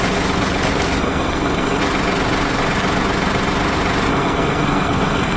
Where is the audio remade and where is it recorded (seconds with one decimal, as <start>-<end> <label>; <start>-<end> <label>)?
0.0-1.0 recorded; 1.0-1.8 remade; 1.8-4.1 recorded; 4.1-5.4 remade